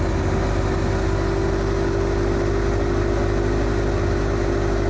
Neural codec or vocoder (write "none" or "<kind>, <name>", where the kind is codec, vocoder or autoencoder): none